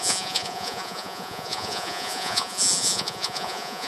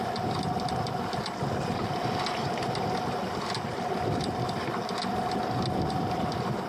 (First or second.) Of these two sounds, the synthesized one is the first